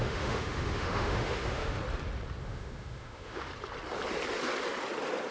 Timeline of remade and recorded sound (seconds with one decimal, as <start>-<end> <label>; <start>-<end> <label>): 0.0-1.8 remade; 1.8-2.4 recorded; 2.4-3.5 remade; 3.5-5.3 recorded